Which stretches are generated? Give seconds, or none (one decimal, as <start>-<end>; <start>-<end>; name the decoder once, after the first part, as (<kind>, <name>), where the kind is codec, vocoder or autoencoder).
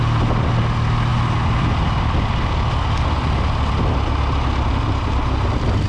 none